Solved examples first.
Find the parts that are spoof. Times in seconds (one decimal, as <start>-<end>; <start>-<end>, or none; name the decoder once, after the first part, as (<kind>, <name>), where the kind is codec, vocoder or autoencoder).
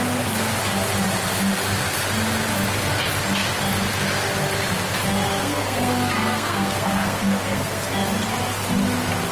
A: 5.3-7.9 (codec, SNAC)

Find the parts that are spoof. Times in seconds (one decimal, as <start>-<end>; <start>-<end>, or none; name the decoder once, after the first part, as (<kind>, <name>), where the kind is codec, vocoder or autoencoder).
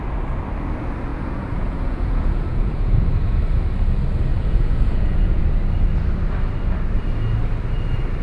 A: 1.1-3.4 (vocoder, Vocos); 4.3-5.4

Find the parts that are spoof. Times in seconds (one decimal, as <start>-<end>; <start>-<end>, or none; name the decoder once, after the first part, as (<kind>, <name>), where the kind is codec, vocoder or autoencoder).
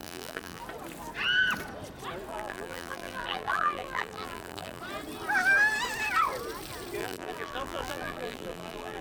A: 0.0-0.6 (vocoder, BigVGAN v2); 2.3-4.8; 7.0-9.0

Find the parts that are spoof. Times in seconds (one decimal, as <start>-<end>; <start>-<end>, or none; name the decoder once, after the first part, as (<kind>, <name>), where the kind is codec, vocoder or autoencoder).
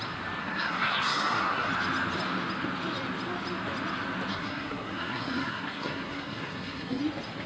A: 0.4-1.7 (codec, SNAC); 4.3-7.0